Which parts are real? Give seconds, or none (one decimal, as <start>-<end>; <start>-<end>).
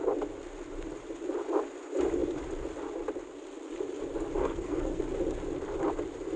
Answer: 0.0-4.4; 5.0-6.4